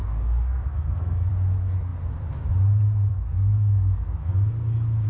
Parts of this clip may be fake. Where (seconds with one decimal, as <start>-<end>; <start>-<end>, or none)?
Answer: 0.0-1.3; 3.1-4.3